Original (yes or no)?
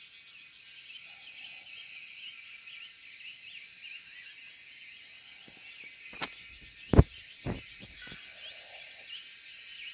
yes